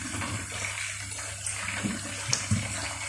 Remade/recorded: recorded